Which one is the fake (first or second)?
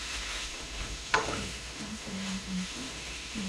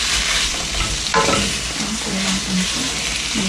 first